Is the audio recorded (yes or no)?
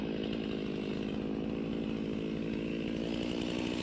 yes